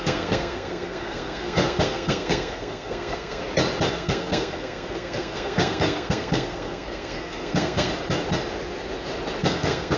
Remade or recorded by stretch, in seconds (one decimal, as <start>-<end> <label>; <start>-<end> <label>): 0.0-3.4 remade; 3.4-3.9 recorded; 3.9-7.9 remade; 7.9-9.4 recorded; 9.4-10.0 remade